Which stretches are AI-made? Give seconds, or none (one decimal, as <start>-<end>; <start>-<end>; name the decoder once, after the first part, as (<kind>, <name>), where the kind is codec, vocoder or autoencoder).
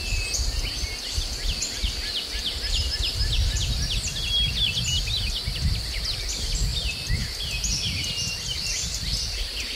none